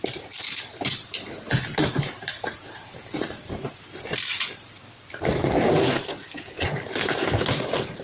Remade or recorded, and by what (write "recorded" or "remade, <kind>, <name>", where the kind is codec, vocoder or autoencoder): remade, vocoder, BigVGAN v2